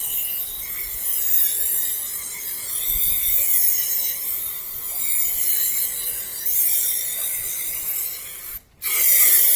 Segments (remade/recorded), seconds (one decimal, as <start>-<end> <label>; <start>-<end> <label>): 0.0-9.6 recorded